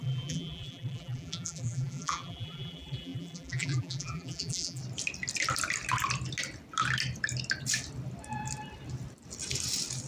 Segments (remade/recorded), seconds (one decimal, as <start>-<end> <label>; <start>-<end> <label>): 0.0-4.8 remade; 4.8-10.1 recorded

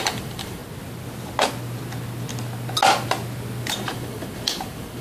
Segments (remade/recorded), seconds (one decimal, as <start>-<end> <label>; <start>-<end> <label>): 0.0-0.6 remade; 0.6-3.6 recorded; 3.6-5.0 remade

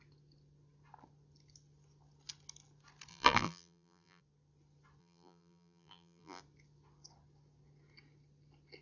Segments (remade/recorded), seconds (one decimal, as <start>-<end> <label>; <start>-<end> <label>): 0.0-3.1 recorded; 3.1-4.2 remade; 4.2-5.0 recorded; 5.0-6.4 remade; 6.4-8.8 recorded